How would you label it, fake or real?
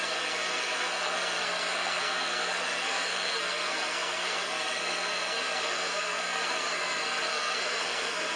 fake